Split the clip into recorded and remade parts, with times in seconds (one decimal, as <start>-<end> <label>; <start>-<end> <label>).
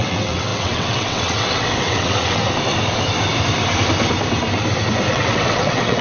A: 0.0-2.4 remade; 2.4-5.1 recorded; 5.1-6.0 remade